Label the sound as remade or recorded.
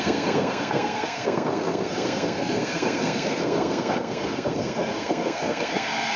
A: remade